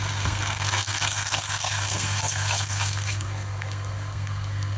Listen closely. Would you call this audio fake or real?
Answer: fake